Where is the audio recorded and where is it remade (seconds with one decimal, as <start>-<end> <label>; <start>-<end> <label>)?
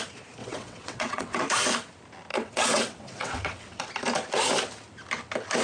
0.0-0.4 recorded; 0.4-1.4 remade; 1.4-2.3 recorded; 2.3-3.9 remade; 3.9-5.6 recorded